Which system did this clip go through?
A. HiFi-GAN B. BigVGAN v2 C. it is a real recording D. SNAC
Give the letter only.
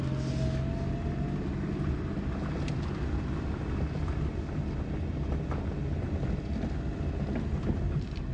C